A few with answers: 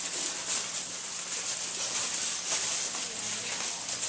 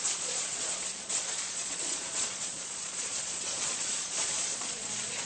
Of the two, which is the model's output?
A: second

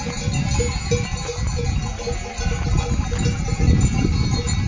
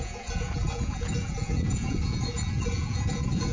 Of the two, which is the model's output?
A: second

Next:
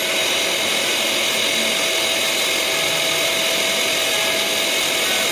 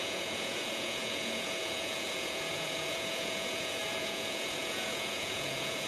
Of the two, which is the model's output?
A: second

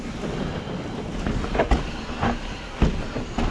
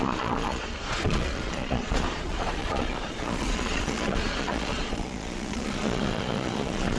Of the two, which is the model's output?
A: second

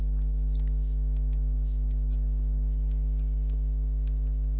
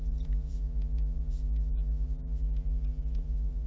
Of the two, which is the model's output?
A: second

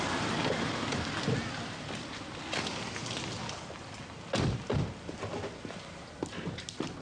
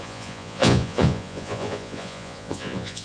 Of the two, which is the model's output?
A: second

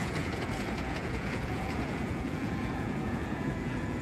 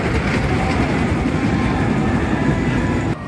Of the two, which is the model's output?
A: first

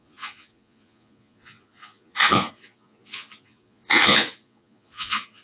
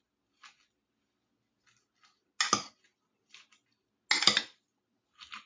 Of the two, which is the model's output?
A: first